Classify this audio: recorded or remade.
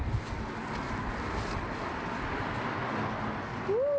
recorded